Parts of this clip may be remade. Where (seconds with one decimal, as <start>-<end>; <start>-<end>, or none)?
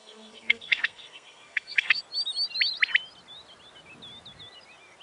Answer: 0.0-2.0